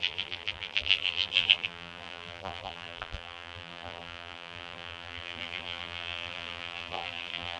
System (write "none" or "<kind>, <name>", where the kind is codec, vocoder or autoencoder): vocoder, BigVGAN v2